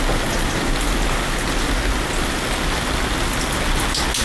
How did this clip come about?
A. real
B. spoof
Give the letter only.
A